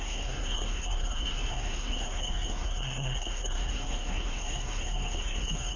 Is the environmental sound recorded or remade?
remade